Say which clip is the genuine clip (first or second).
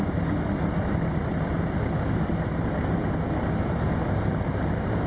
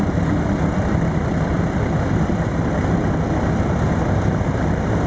first